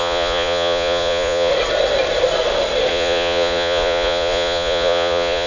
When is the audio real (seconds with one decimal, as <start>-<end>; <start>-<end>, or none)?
1.5-2.9